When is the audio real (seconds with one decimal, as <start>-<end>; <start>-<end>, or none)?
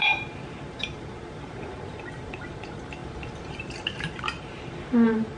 none